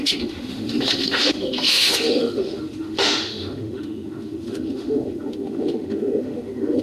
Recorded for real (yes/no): no